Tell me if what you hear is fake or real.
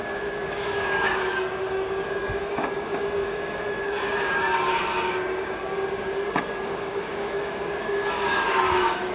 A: fake